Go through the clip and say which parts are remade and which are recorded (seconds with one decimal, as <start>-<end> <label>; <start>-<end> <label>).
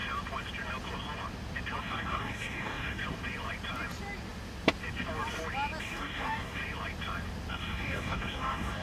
0.0-1.8 recorded; 1.8-3.0 remade; 3.0-5.8 recorded; 5.8-6.6 remade; 6.6-7.5 recorded; 7.5-8.8 remade